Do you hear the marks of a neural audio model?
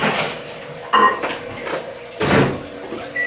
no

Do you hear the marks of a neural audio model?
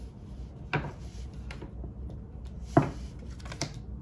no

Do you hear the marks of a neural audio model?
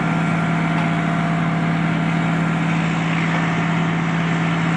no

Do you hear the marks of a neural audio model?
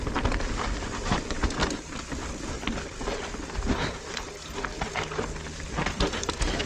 no